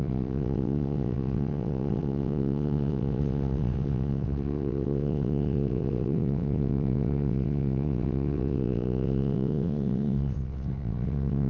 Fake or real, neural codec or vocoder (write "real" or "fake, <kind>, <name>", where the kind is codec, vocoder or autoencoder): fake, vocoder, WaveNeXt